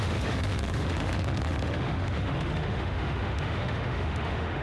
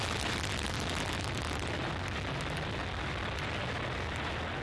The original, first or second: second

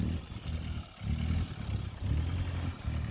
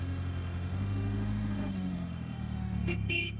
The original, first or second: first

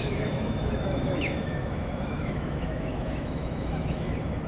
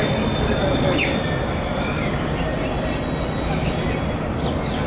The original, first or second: second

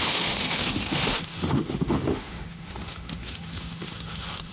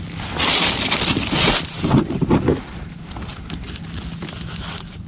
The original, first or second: second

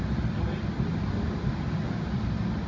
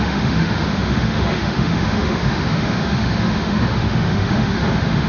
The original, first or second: first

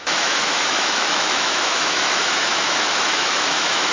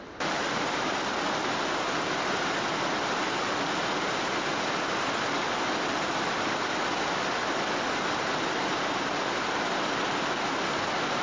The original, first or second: second